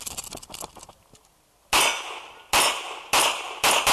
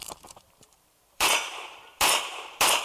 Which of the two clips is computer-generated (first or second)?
second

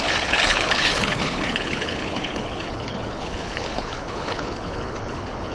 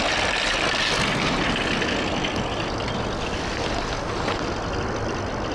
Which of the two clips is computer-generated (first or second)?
first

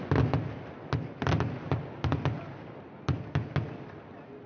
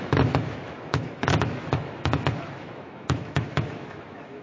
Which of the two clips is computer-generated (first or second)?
second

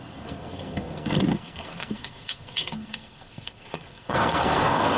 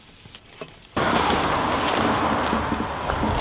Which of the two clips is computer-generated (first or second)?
first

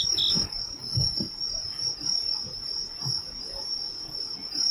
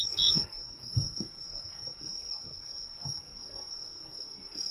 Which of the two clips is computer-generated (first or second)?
second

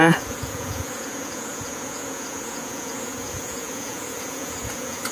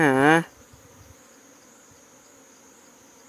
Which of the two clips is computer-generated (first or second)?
first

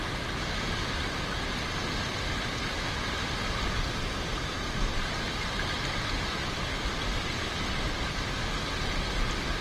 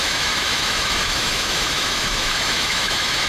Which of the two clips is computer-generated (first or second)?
second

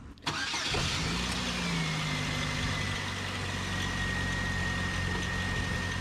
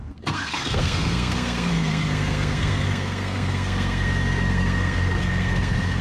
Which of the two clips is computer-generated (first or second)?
second